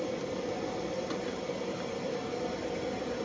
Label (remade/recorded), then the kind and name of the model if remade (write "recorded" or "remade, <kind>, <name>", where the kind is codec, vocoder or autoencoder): recorded